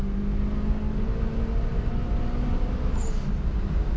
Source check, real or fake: real